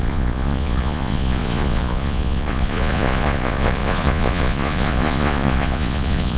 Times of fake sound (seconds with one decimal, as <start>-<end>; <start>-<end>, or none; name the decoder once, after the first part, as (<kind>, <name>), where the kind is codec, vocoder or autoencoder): 0.0-6.4 (vocoder, Vocos)